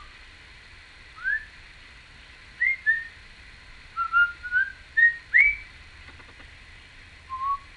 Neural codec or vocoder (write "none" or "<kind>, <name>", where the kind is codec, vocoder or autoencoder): none